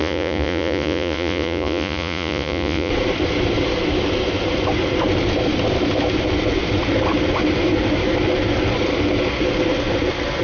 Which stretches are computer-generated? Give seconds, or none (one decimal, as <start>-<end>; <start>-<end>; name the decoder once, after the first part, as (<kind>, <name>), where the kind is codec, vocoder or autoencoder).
0.0-2.9 (vocoder, Vocos)